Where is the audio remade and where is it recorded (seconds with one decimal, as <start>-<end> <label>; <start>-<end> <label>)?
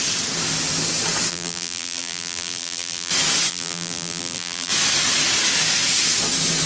0.0-1.3 recorded; 1.3-3.1 remade; 3.1-3.5 recorded; 3.5-4.7 remade; 4.7-6.7 recorded